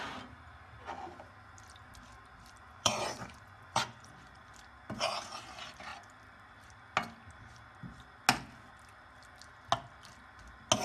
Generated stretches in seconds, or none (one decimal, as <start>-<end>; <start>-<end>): 2.6-4.5